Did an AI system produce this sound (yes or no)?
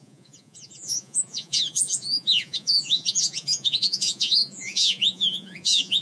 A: yes